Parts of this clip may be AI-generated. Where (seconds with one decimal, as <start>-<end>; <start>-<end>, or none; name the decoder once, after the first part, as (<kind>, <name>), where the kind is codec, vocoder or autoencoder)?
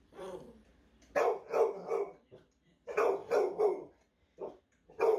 0.0-0.7 (vocoder, BigVGAN v2); 1.9-3.2; 4.6-5.2